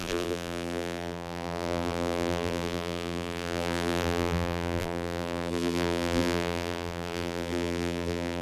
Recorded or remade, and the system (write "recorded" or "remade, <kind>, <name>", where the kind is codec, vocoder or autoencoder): remade, vocoder, BigVGAN v2